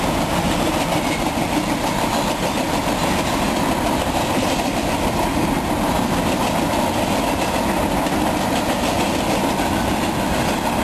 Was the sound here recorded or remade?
recorded